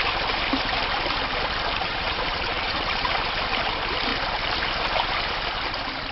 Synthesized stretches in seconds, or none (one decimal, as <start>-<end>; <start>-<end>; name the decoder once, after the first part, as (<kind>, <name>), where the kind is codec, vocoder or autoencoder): 1.8-3.1 (vocoder, Vocos)